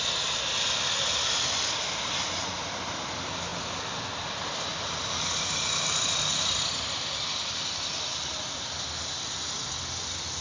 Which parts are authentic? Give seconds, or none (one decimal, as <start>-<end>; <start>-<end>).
0.0-10.4